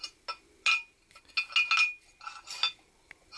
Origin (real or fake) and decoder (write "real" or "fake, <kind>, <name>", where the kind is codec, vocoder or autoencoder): real